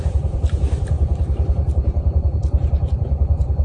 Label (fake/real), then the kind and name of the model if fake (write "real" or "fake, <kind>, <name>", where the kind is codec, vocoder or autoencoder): fake, vocoder, BigVGAN v2